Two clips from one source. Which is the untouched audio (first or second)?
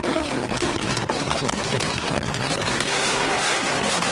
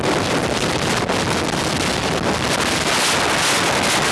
second